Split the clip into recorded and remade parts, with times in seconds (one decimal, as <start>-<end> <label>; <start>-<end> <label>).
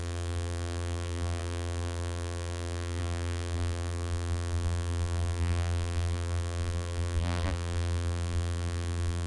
0.0-9.3 remade